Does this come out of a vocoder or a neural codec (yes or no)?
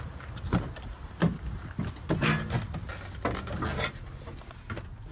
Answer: no